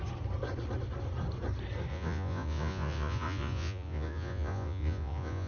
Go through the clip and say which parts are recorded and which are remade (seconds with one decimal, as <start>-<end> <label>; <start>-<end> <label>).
0.0-1.9 recorded; 1.9-5.5 remade